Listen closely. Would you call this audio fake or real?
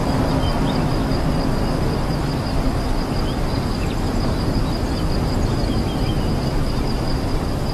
real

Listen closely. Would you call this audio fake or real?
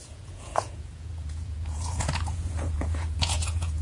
fake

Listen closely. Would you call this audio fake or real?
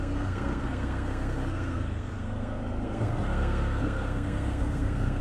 fake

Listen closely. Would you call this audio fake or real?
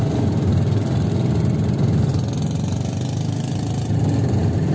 real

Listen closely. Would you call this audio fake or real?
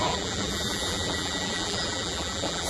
fake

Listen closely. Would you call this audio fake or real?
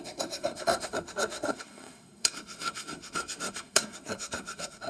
fake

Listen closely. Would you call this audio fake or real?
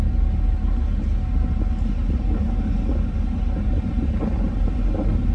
real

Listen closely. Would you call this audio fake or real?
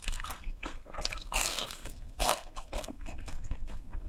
fake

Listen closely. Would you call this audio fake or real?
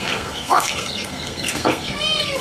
fake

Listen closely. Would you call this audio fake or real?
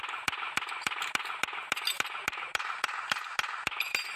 real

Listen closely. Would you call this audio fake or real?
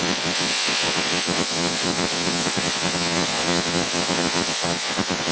fake